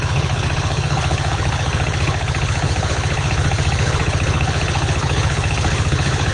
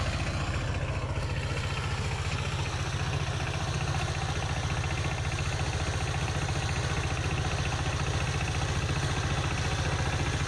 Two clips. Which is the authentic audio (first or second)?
second